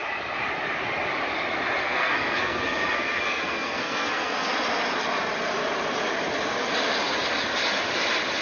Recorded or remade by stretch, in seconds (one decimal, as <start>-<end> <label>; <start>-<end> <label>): 0.0-1.8 recorded; 1.8-4.5 remade; 4.5-8.4 recorded